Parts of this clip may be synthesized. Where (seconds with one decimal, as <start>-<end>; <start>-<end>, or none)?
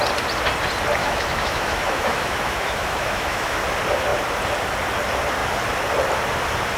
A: 1.0-3.6